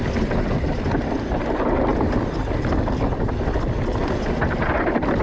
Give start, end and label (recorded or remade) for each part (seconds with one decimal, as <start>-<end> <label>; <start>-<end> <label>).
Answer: 0.0-1.9 remade; 1.9-5.2 recorded